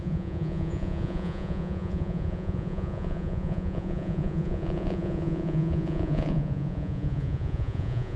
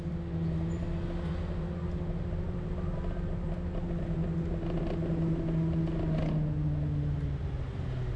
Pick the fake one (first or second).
first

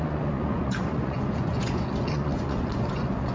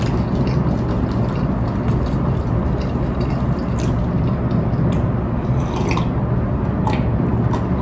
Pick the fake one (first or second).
first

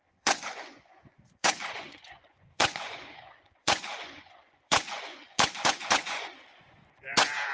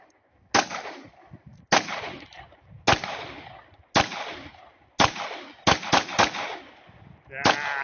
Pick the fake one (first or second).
first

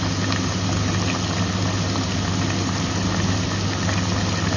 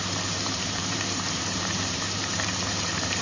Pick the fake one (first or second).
second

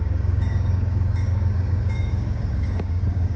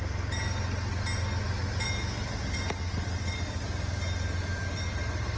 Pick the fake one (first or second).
first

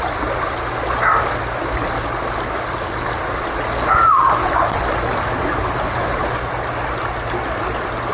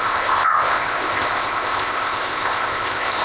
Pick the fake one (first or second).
second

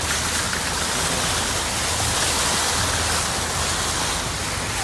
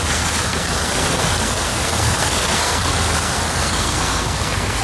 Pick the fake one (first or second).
second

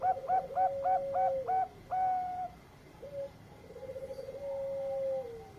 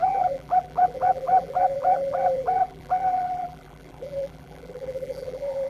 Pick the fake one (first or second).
second